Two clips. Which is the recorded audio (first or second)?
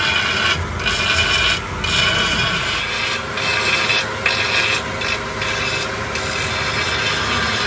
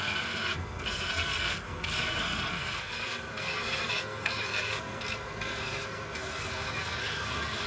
first